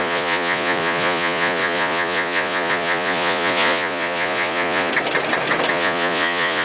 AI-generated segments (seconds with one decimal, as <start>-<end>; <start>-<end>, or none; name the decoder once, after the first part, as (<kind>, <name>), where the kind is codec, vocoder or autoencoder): 0.0-4.9 (vocoder, Vocos); 5.7-6.6

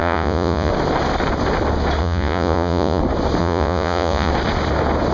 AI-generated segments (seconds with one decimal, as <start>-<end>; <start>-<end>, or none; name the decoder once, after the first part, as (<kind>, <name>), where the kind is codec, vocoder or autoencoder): 0.0-0.7 (vocoder, Vocos); 2.0-3.0; 3.4-4.3